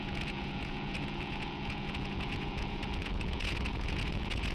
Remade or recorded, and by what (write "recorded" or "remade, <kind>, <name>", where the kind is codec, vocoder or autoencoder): remade, vocoder, Vocos